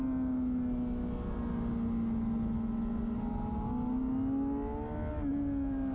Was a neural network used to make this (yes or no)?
no